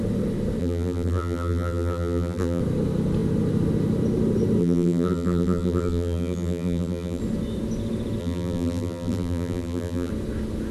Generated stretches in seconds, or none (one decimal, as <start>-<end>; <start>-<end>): 0.6-2.6; 4.6-7.2; 8.2-10.1